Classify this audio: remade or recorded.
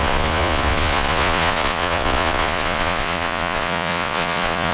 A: remade